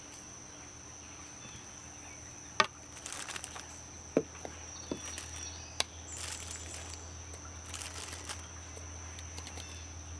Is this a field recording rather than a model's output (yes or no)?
yes